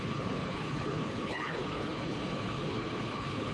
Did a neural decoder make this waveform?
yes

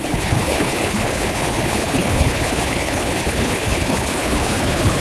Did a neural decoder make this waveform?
yes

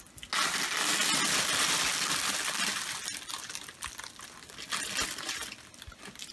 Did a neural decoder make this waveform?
no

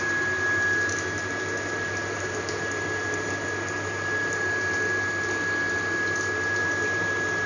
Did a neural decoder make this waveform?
no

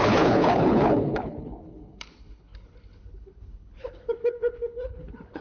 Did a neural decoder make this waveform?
yes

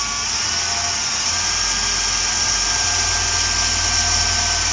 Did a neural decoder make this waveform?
no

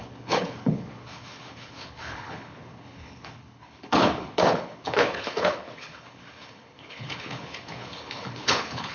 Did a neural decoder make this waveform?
yes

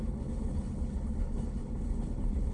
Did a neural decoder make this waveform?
yes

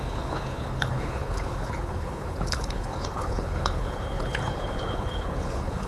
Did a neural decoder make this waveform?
yes